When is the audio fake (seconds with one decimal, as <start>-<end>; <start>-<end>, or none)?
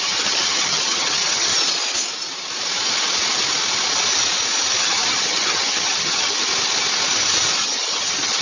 0.0-1.5; 4.8-6.5; 7.6-8.4